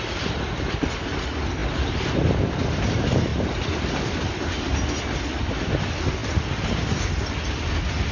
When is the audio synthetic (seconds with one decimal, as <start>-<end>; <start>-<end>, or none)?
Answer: none